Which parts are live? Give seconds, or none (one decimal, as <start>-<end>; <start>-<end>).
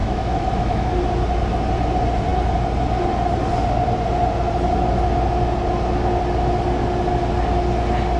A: 0.9-8.2